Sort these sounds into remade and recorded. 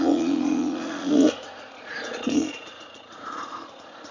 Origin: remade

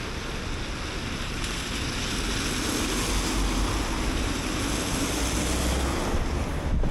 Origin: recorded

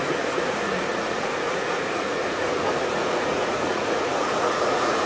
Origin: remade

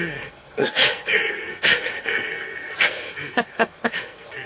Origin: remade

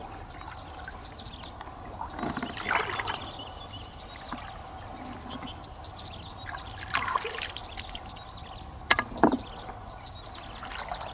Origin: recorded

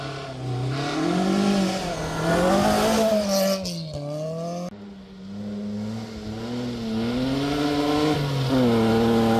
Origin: recorded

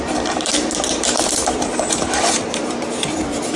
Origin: remade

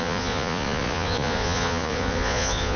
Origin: remade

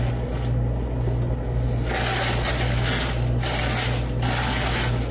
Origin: recorded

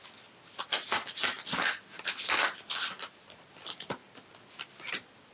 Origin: recorded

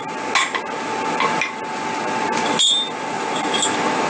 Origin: recorded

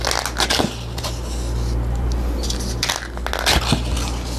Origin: recorded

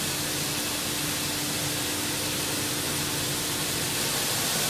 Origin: recorded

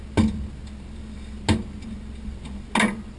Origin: recorded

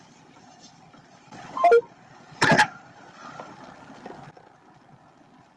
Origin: recorded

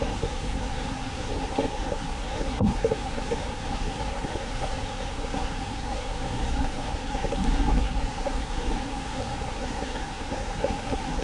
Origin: remade